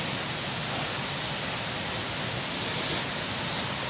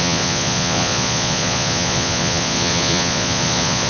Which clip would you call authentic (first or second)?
first